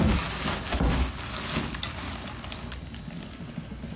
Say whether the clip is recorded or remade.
recorded